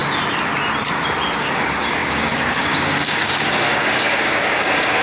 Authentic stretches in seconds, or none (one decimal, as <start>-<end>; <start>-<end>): 0.0-1.4